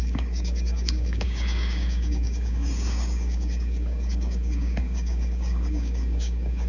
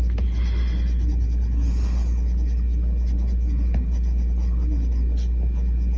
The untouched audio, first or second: second